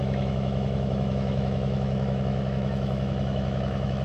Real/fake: fake